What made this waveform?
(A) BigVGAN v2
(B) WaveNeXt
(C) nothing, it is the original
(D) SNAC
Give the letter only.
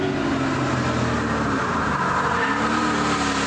C